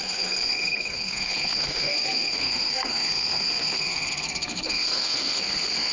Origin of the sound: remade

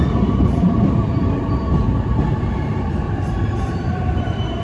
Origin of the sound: remade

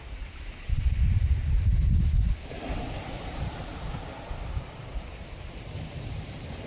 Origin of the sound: remade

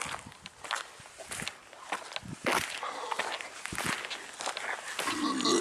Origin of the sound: recorded